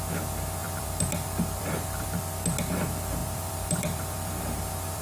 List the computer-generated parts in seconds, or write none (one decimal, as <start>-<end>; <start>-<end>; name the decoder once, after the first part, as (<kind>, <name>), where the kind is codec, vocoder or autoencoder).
0.6-2.2 (vocoder, BigVGAN v2); 3.2-5.0